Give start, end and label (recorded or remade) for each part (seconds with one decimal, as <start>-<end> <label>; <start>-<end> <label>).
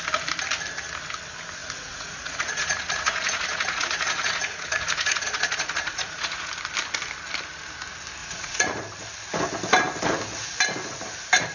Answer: 0.0-1.6 recorded; 1.6-6.5 remade; 6.5-8.2 recorded; 8.2-8.8 remade; 8.8-11.5 recorded